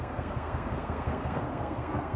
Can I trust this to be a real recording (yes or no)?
no